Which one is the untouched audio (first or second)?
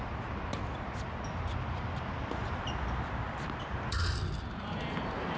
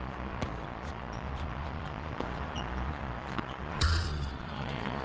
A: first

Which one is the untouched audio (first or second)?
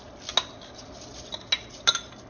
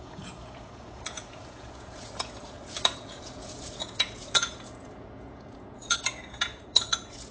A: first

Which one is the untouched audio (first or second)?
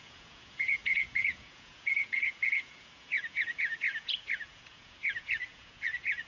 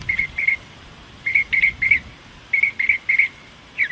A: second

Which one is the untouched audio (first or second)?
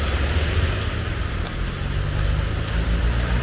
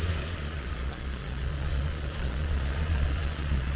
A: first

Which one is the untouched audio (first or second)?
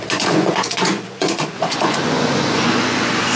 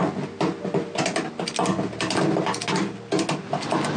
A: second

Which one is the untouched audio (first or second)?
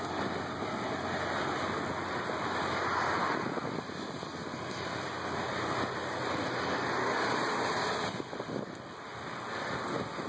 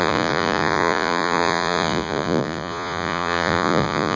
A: first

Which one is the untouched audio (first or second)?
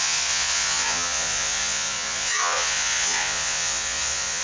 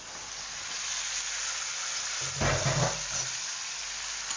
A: second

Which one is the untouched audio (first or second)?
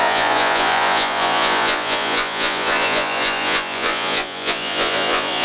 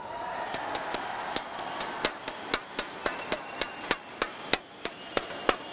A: second